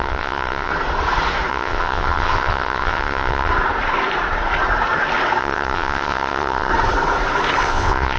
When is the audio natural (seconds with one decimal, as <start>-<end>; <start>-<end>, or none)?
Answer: 0.7-1.5; 3.5-5.4; 6.7-7.6